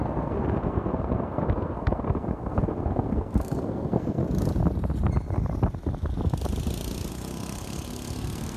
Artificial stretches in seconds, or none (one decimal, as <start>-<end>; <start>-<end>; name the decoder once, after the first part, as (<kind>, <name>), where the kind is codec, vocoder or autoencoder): 0.0-4.2 (codec, SNAC); 7.1-8.6